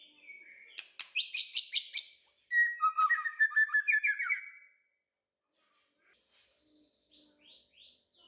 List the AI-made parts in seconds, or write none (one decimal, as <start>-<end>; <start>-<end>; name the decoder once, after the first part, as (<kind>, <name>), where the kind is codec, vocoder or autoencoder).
none